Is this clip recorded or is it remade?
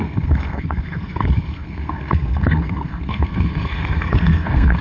remade